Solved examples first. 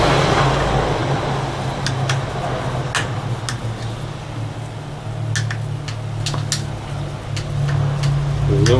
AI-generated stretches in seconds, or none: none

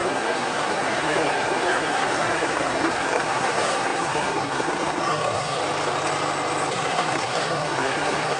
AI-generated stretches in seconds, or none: 0.0-5.6; 6.7-8.4

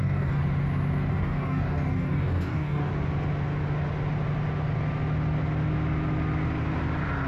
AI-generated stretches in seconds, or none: 0.0-0.4; 1.1-2.9

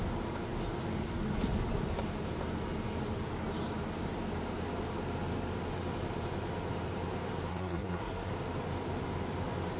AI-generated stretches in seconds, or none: 7.5-8.3

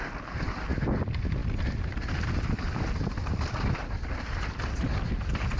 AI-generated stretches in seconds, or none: none

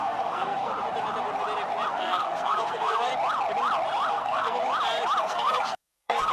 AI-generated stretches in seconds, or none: 0.0-0.7; 1.9-3.1; 4.1-4.6; 5.2-6.3